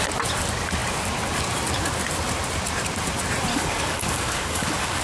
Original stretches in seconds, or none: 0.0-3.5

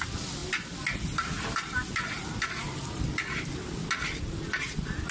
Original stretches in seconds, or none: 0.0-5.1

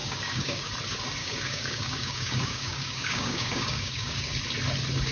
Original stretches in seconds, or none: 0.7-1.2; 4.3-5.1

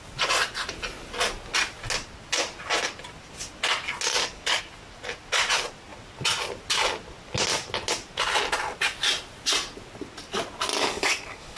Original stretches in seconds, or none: 0.0-4.1; 4.6-10.7

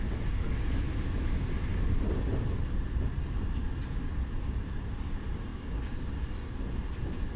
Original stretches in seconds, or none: 0.0-5.5; 6.0-7.4

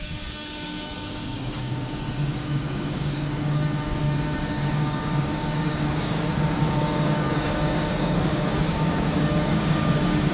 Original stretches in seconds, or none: none

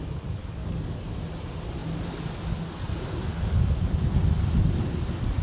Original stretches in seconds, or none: 0.0-0.4; 1.2-5.4